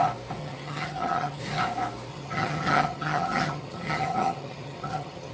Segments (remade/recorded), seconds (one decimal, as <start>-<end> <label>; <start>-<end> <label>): 0.0-0.4 recorded; 0.4-1.4 remade; 1.4-2.1 recorded; 2.1-5.3 remade